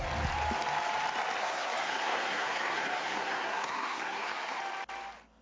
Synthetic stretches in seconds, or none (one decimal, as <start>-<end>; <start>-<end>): 1.4-4.6